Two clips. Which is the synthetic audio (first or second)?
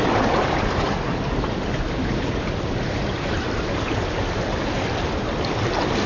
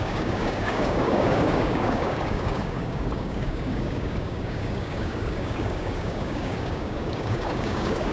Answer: second